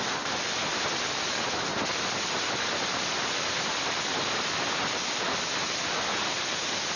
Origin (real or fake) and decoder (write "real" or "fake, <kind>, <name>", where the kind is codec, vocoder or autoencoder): real